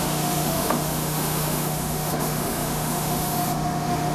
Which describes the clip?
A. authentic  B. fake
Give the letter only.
B